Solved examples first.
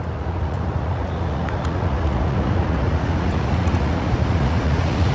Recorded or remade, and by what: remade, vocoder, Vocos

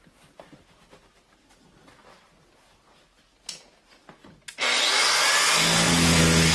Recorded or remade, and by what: recorded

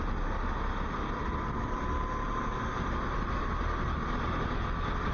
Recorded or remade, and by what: recorded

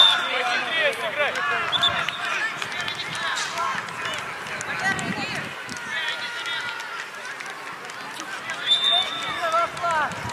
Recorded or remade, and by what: recorded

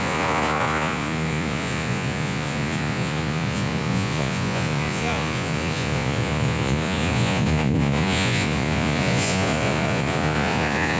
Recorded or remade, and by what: remade, vocoder, Vocos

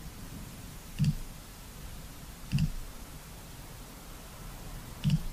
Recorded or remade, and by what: recorded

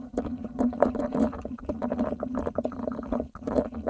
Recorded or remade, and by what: remade, vocoder, Vocos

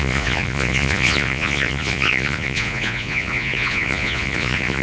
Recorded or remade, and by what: remade, vocoder, Vocos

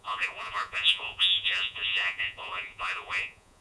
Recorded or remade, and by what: remade, vocoder, Vocos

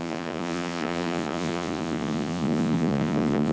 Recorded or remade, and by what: remade, vocoder, Vocos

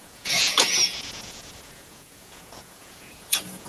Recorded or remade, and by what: remade, vocoder, Vocos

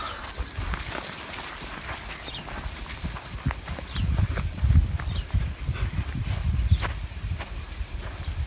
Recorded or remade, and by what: recorded